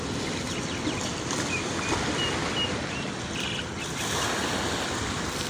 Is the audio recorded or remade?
recorded